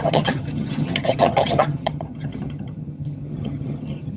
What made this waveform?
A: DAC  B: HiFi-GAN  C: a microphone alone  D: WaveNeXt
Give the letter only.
B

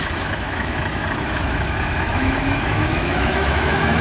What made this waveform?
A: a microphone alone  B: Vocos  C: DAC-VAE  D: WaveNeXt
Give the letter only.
C